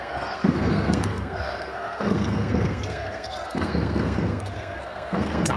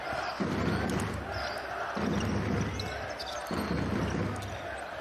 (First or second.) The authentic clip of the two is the second